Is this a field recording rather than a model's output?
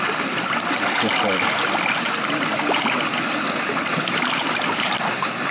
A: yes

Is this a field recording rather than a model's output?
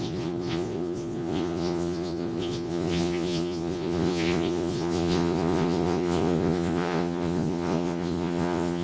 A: no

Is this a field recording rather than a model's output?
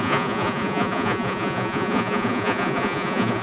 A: no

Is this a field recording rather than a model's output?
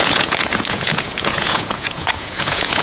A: no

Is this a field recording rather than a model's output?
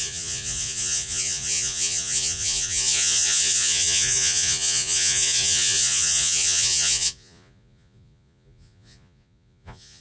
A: no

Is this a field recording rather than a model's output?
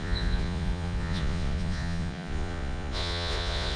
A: no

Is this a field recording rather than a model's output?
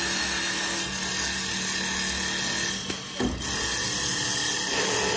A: yes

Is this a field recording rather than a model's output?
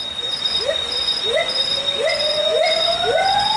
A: no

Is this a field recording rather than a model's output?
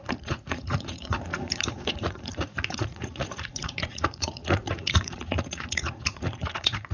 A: no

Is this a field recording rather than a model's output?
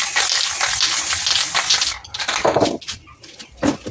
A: yes